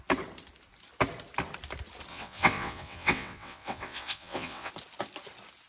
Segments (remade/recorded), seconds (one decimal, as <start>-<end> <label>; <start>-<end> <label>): 0.0-2.1 recorded; 2.1-4.7 remade; 4.7-5.7 recorded